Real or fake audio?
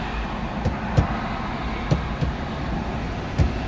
real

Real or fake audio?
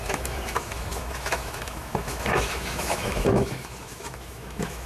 fake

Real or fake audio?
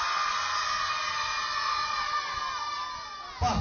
real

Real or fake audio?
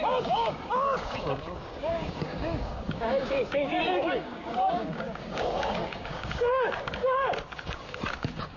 fake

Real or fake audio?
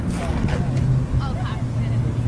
real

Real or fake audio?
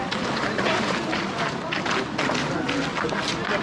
real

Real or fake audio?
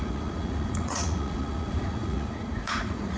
fake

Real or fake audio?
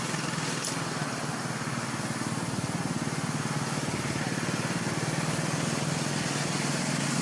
real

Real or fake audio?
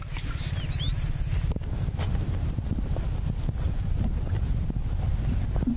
real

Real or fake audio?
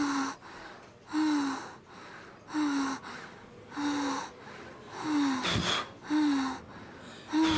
real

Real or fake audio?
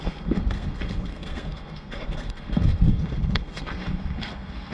fake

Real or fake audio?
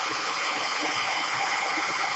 fake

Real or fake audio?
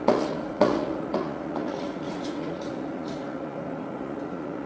fake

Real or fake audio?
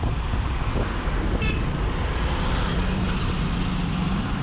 real